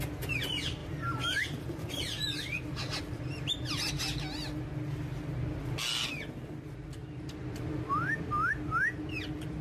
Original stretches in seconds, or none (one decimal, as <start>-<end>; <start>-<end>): 0.0-0.8; 3.9-9.6